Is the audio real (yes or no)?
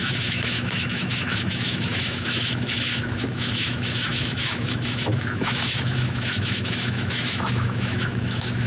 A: no